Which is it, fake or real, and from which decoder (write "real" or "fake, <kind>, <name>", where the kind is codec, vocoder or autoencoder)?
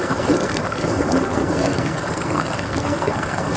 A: fake, codec, SNAC